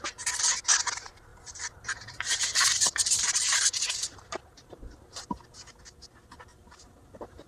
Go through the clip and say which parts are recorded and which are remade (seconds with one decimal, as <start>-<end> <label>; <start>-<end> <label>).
0.0-1.3 recorded; 1.3-5.8 remade; 5.8-6.5 recorded; 6.5-7.5 remade